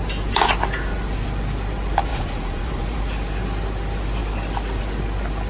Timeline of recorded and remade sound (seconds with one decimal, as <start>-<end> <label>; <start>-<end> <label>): 0.0-2.1 recorded; 2.1-3.0 remade; 3.0-5.5 recorded